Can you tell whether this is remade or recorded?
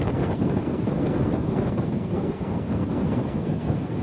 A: remade